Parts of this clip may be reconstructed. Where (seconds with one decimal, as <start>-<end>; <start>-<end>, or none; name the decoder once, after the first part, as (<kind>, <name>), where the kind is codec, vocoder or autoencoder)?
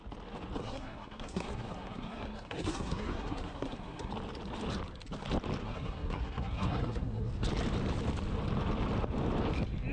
0.6-4.1 (codec, SNAC); 5.6-7.3